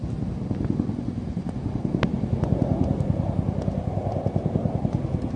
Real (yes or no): yes